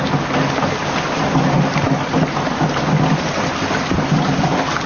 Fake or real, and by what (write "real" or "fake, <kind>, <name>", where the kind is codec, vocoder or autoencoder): real